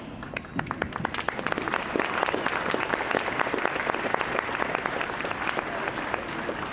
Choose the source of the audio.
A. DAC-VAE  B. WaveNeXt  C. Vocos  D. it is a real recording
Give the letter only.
D